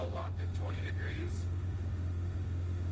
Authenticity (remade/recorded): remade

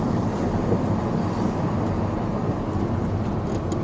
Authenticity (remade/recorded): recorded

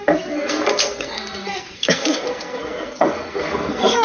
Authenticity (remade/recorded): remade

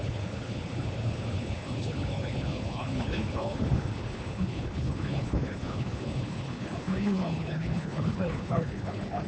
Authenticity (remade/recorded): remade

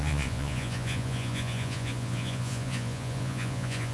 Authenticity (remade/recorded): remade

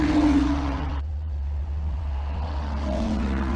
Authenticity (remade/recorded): remade